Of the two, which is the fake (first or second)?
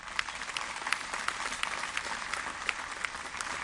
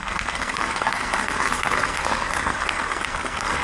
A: second